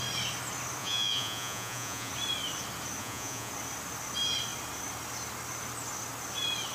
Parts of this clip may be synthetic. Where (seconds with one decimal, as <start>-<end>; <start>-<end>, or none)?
0.8-2.1; 3.0-3.5